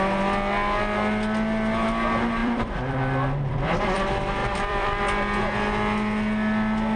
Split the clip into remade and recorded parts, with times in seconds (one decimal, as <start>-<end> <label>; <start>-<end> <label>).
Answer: 0.0-2.4 recorded; 2.4-4.0 remade; 4.0-4.4 recorded; 4.4-5.0 remade; 5.0-7.0 recorded